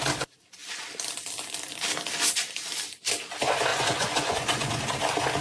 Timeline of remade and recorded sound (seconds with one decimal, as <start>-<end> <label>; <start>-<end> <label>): 0.0-3.7 recorded; 3.7-4.8 remade; 4.8-5.4 recorded